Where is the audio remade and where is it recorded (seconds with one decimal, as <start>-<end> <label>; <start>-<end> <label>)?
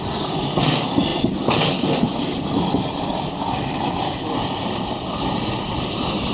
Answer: 0.0-6.3 recorded